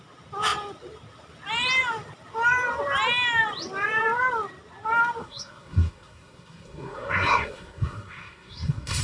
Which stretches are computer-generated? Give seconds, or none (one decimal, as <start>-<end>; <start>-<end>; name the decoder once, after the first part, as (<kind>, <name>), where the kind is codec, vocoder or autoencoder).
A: 5.2-9.0 (codec, SNAC)